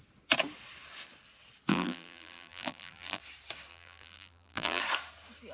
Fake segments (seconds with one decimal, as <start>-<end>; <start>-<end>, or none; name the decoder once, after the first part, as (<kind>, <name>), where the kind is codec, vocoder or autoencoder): 1.7-3.2 (vocoder, BigVGAN v2); 3.7-4.8